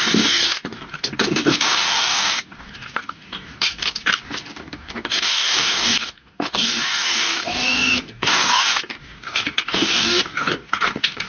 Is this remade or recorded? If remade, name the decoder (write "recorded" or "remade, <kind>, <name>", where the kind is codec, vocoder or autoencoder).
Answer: remade, codec, DAC